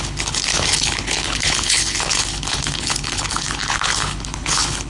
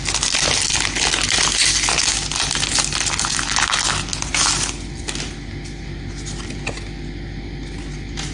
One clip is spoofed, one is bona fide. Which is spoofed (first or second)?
first